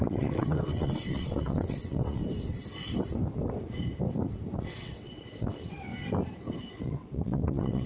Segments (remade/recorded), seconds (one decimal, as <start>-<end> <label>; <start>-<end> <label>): 0.0-2.2 remade; 2.2-4.6 recorded; 4.6-5.9 remade; 5.9-6.7 recorded; 6.7-7.9 remade